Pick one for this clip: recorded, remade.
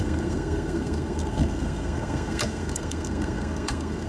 remade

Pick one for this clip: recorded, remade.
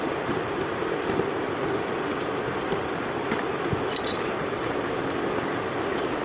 recorded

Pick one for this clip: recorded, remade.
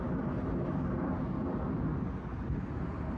recorded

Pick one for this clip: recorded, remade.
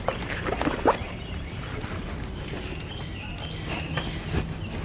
recorded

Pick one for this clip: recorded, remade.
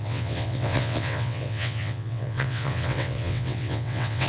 remade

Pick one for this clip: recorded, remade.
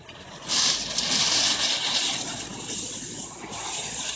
recorded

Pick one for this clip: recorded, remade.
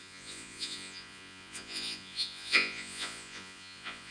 remade